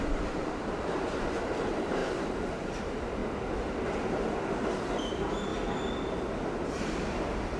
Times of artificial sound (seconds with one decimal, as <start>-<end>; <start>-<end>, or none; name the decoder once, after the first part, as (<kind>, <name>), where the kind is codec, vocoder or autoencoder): 0.0-3.2 (vocoder, BigVGAN v2); 4.9-5.5; 6.7-7.6